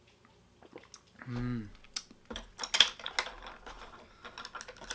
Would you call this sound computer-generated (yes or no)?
no